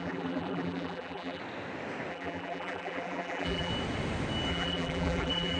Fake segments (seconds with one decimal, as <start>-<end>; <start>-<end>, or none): 0.0-1.4; 2.1-3.7; 4.5-5.6